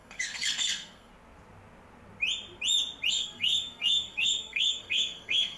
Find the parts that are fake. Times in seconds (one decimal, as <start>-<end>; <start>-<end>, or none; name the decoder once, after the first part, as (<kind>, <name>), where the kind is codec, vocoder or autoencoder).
0.0-1.1 (codec, SNAC); 3.1-5.6